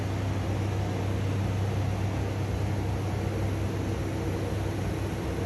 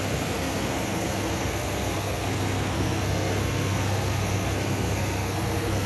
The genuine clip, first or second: first